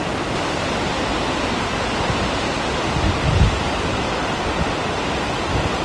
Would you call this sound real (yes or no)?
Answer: yes